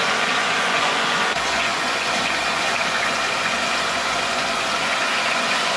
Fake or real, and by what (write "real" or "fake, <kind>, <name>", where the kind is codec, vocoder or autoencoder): fake, vocoder, Vocos